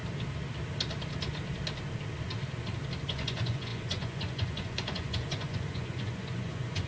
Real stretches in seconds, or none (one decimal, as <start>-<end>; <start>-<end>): 0.0-3.0